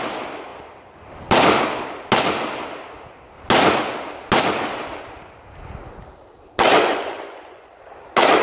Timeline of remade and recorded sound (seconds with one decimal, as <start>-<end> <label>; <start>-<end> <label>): 0.0-6.7 recorded; 6.7-7.7 remade; 7.7-8.4 recorded